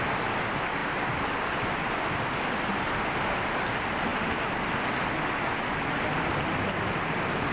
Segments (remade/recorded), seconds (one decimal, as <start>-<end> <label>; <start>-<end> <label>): 0.0-7.5 recorded